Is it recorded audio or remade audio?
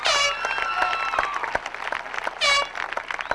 recorded